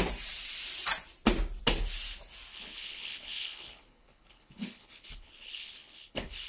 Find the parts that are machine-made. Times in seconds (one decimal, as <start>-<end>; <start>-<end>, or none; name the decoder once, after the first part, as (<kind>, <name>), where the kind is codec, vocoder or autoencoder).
2.5-6.5 (codec, HILCodec)